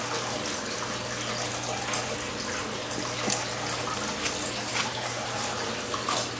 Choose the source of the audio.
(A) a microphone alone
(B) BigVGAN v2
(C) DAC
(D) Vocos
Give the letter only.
A